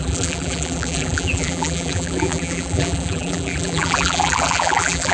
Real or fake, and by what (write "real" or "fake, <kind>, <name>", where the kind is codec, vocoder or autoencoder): fake, vocoder, BigVGAN v2